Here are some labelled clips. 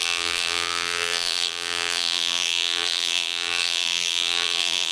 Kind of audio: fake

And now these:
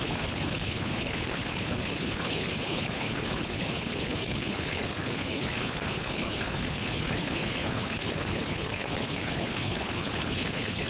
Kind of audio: fake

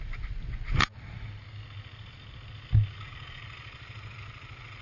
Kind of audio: real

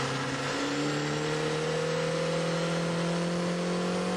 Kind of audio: real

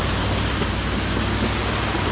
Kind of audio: real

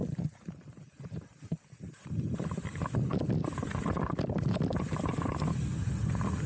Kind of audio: real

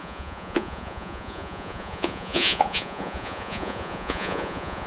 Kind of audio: fake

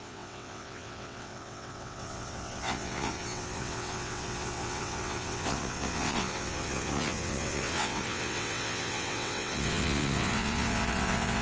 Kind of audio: fake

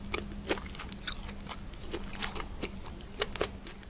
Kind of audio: real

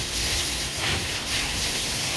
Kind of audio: fake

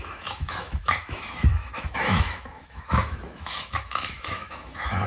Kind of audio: fake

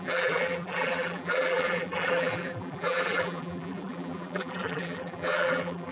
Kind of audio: fake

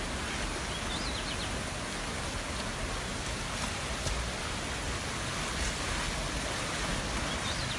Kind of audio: real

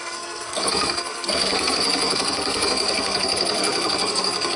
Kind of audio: fake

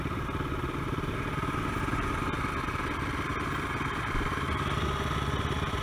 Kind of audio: real